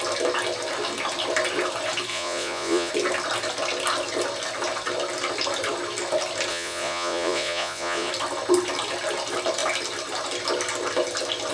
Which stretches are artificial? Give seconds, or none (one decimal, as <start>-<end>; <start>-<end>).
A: 2.1-2.9; 6.5-8.1